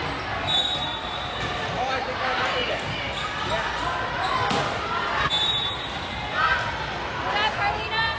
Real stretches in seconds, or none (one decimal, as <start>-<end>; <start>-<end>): 0.0-8.2